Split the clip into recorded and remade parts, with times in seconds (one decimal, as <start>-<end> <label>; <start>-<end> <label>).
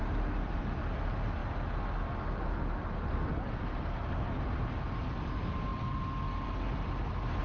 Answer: 0.0-7.4 recorded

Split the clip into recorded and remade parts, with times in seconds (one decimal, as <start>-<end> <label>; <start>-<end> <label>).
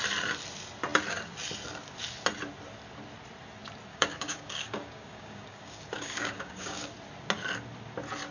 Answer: 0.0-3.9 recorded; 3.9-6.9 remade; 6.9-8.3 recorded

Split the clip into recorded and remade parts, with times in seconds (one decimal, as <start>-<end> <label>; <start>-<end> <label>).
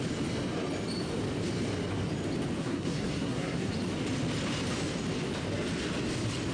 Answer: 0.0-2.6 recorded; 2.6-3.7 remade; 3.7-6.5 recorded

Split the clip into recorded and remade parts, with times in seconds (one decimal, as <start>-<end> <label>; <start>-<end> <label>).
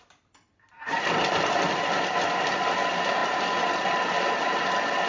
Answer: 0.0-5.1 recorded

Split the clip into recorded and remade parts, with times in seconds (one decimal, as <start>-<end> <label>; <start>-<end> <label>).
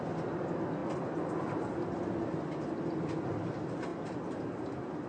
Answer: 0.0-5.1 recorded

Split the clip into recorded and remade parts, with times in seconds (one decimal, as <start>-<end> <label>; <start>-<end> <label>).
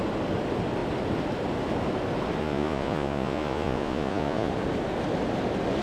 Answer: 0.0-2.4 recorded; 2.4-4.5 remade; 4.5-5.8 recorded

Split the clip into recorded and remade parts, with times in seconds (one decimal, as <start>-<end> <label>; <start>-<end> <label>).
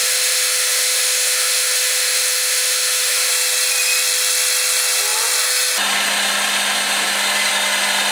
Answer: 0.0-3.3 remade; 3.3-8.1 recorded